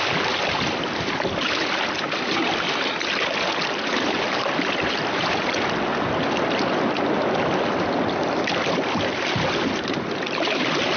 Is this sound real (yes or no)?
yes